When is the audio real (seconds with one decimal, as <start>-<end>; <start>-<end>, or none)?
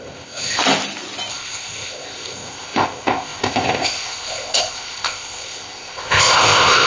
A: 0.6-1.3